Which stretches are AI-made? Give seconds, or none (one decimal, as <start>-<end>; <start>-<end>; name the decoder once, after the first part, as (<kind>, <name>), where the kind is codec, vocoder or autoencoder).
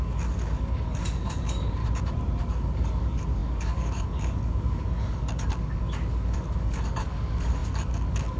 0.0-1.8 (codec, DAC); 2.4-8.4